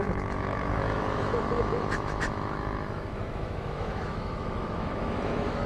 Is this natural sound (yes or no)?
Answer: no